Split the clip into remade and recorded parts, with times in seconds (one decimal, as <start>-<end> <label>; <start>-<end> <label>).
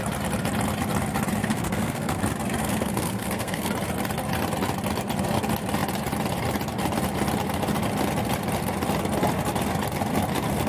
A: 0.0-1.4 recorded; 1.4-2.2 remade; 2.2-2.6 recorded; 2.6-3.7 remade; 3.7-10.7 recorded